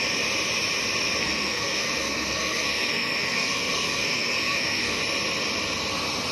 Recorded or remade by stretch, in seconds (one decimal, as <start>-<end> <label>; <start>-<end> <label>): 0.0-1.2 recorded; 1.2-5.0 remade; 5.0-6.3 recorded